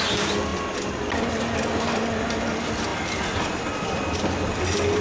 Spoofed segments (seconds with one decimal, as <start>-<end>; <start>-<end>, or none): none